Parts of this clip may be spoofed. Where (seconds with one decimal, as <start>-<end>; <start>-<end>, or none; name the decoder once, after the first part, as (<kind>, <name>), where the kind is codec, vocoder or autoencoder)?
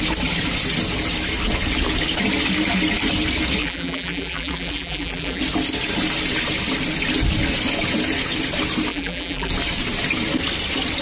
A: 3.6-5.4 (vocoder, BigVGAN v2); 8.9-9.5